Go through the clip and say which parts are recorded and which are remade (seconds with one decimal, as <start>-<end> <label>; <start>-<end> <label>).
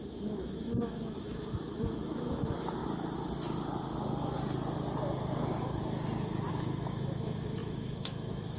0.0-2.8 remade; 2.8-6.5 recorded; 6.5-8.6 remade